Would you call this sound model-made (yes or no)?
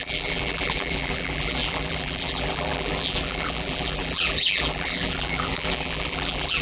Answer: yes